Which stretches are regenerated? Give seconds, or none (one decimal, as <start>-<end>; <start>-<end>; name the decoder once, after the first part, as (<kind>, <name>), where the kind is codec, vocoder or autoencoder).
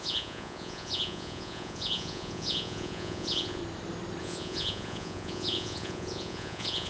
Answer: 0.0-3.6 (vocoder, Vocos); 4.2-6.9